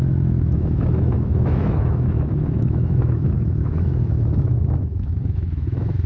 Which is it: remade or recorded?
remade